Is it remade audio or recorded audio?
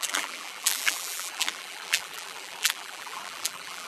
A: remade